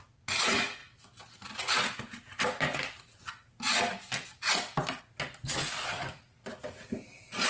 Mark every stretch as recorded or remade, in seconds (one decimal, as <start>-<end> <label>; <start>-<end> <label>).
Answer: 0.0-7.5 recorded